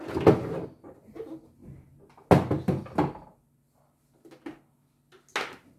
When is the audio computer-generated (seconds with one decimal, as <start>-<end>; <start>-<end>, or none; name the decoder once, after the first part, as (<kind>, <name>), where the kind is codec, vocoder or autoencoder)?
none